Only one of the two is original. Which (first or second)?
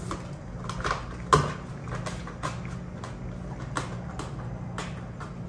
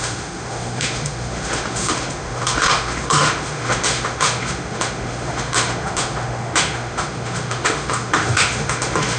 first